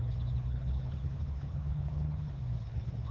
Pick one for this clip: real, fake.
fake